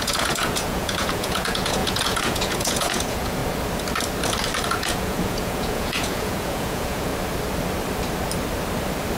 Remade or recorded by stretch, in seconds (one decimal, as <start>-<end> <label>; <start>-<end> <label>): 0.0-3.4 remade; 3.4-4.6 recorded; 4.6-7.1 remade; 7.1-9.2 recorded